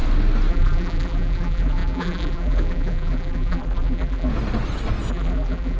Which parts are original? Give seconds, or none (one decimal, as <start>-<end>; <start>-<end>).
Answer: 0.0-0.5; 4.3-5.1